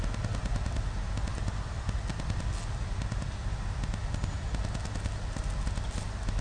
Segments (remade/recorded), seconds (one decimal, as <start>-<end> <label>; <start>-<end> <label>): 0.0-6.4 recorded